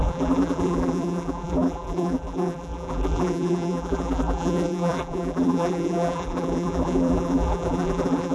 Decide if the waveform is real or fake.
fake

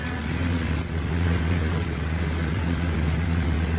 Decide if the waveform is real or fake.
fake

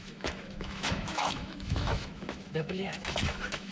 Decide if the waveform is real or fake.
fake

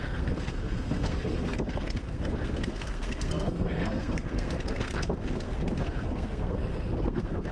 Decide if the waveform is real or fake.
fake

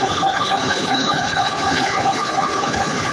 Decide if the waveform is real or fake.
fake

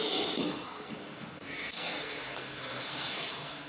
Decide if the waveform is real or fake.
fake